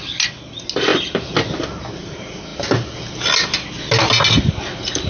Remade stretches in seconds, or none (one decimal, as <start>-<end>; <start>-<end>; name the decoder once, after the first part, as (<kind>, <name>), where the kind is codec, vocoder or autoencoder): none